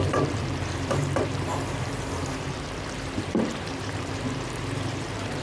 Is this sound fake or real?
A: fake